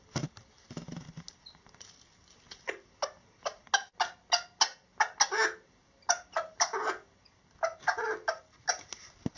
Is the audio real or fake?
real